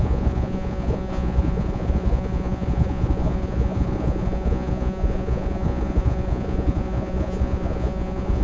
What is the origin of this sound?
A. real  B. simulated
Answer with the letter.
B